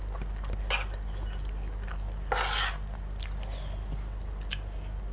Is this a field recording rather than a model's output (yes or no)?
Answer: yes